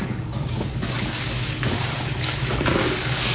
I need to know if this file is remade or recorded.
remade